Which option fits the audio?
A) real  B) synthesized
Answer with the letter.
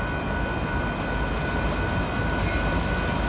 A